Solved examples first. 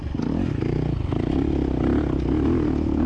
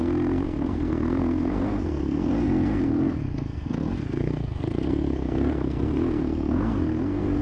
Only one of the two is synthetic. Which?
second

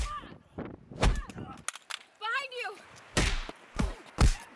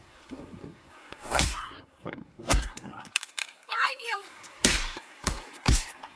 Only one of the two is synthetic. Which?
second